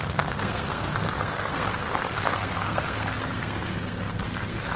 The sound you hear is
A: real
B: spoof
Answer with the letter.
B